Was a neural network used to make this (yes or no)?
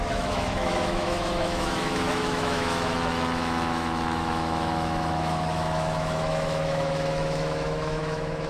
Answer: yes